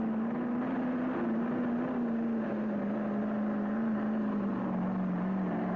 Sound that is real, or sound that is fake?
real